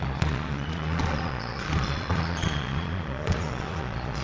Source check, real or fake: fake